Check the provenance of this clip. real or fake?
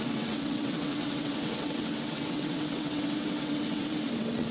fake